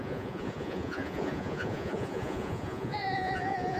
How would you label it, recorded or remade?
remade